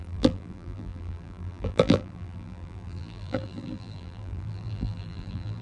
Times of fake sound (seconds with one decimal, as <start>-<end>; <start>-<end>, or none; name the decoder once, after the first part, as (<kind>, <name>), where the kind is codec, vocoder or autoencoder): 0.0-5.6 (vocoder, BigVGAN v2)